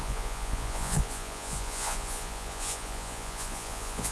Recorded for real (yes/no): no